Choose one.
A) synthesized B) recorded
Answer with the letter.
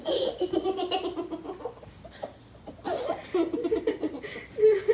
B